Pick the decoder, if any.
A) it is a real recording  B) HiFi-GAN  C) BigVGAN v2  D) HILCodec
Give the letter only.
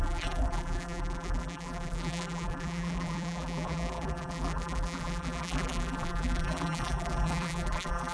C